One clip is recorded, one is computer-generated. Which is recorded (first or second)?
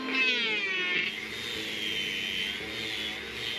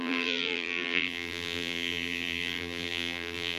first